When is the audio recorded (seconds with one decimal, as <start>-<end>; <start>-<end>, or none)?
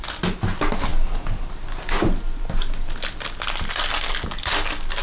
0.0-5.0